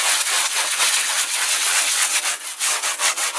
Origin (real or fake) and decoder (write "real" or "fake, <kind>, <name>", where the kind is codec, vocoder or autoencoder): fake, vocoder, WaveNeXt